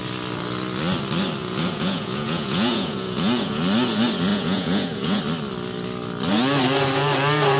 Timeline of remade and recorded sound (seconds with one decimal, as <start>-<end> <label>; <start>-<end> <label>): 0.0-1.4 recorded; 1.4-3.6 remade; 3.6-4.3 recorded; 4.3-5.2 remade; 5.2-7.6 recorded